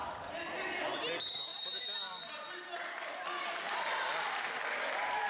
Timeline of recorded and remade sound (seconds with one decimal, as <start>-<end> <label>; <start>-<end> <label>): 0.0-0.9 remade; 0.9-5.3 recorded